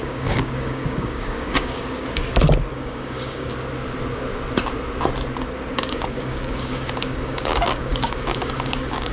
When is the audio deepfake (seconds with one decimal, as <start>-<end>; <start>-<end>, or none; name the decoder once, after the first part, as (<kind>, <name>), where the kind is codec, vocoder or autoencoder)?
0.0-2.2 (codec, DAC); 2.7-3.5; 5.7-9.1